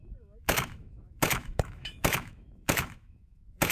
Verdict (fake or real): fake